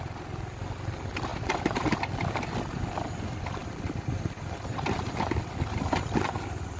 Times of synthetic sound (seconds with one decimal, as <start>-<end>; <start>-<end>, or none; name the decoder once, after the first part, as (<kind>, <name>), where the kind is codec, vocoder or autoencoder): none